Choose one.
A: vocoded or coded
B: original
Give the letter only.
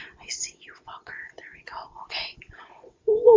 A